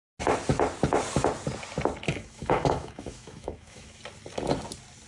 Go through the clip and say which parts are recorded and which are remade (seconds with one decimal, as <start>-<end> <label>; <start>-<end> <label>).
0.0-2.1 recorded; 2.1-4.0 remade; 4.0-5.1 recorded